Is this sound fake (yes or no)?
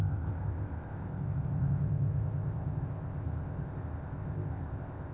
yes